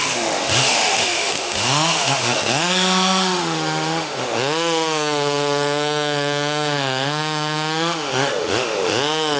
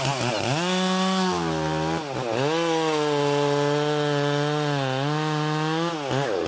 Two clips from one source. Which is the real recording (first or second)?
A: second